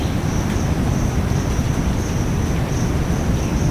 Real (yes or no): no